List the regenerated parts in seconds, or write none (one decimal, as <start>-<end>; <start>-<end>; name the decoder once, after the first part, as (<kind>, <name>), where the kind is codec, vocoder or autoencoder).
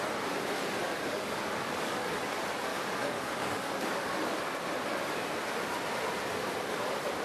0.8-2.2 (codec, DAC); 2.7-4.4